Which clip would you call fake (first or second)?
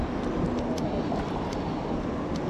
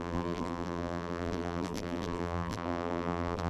second